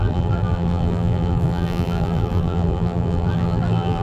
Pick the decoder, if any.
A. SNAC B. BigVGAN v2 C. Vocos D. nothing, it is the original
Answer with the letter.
B